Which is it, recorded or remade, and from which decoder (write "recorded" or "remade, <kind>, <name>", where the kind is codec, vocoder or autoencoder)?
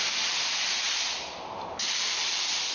remade, vocoder, BigVGAN v2